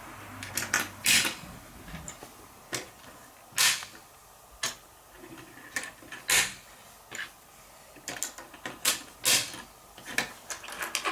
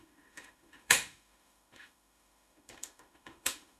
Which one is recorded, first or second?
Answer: first